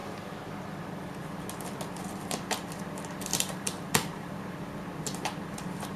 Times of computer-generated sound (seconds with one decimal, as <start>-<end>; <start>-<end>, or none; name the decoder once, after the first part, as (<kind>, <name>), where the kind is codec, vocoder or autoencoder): 3.3-5.0 (vocoder, BigVGAN v2)